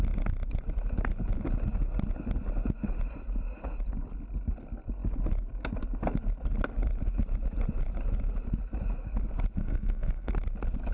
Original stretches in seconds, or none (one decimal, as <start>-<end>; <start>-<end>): 0.0-9.6; 10.3-10.9